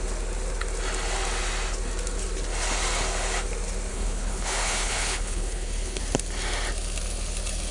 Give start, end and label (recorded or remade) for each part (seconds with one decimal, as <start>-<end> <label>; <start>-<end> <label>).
0.0-3.9 recorded; 3.9-6.0 remade; 6.0-7.7 recorded